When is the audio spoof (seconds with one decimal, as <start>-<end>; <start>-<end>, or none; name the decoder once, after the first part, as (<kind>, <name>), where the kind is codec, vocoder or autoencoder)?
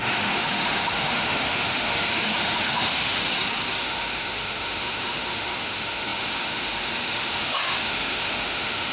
0.0-3.2 (autoencoder, DAC-VAE); 3.8-8.9